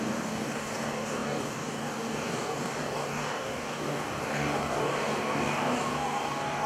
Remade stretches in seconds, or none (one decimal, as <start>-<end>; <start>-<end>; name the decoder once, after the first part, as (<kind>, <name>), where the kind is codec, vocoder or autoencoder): 0.0-6.7 (codec, DAC)